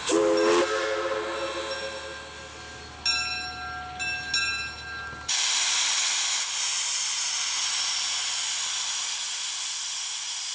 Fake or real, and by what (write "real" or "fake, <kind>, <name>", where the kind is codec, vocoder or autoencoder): real